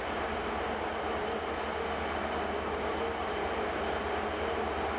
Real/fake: real